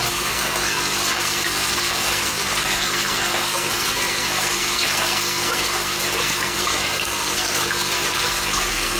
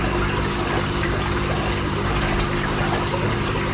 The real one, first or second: second